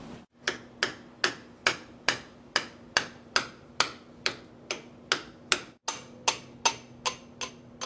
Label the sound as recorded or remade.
recorded